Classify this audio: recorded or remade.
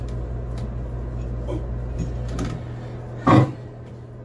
recorded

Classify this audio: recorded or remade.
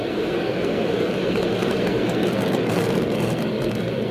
remade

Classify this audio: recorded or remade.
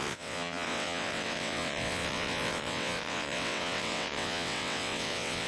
remade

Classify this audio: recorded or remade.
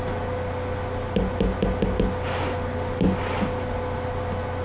recorded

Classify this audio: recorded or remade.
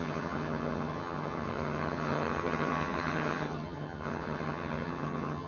remade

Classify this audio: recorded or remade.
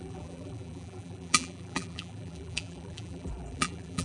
remade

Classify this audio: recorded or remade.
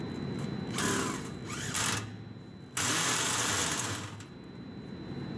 recorded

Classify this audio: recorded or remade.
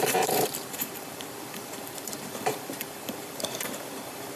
remade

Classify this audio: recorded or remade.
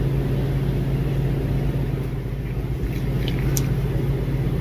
recorded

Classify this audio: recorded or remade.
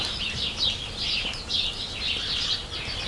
recorded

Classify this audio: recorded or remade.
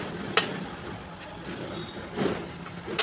recorded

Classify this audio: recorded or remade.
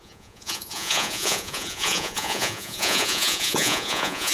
remade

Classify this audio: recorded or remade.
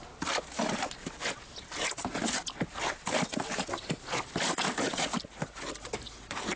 recorded